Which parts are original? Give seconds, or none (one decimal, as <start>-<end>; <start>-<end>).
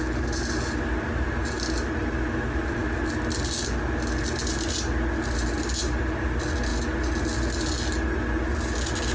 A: 0.0-9.1